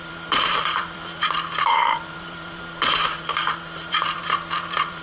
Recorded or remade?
remade